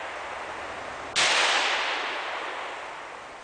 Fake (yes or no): no